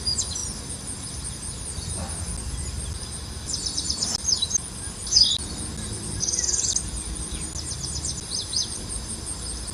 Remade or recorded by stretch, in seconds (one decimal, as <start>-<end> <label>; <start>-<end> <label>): 0.0-9.7 recorded